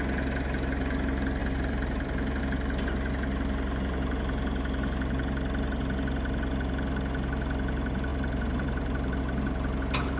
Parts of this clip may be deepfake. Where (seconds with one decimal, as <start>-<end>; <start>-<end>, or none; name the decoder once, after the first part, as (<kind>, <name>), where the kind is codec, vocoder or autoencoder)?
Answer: 1.4-2.4 (vocoder, BigVGAN v2); 8.1-9.2